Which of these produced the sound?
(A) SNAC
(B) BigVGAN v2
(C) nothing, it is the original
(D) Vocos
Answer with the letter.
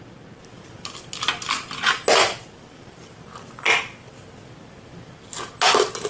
C